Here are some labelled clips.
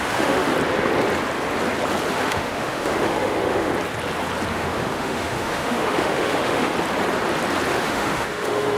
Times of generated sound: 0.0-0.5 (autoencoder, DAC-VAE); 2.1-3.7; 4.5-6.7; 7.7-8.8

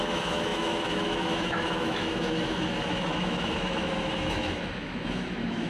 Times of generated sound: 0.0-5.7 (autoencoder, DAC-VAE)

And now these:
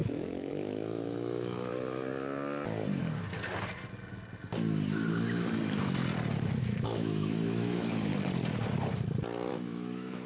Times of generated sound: 0.0-1.7 (autoencoder, DAC-VAE); 6.6-8.1; 9.5-10.3